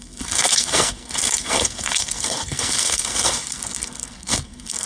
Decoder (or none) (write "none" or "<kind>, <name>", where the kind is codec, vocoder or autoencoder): codec, SNAC